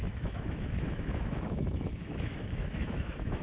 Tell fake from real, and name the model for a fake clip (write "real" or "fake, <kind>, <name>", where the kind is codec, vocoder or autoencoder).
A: fake, autoencoder, DAC-VAE